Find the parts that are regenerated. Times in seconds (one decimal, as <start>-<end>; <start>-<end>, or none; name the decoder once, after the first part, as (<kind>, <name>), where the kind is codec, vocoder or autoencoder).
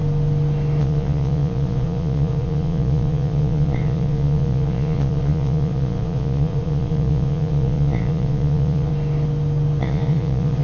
0.8-8.9 (vocoder, Vocos); 9.8-10.6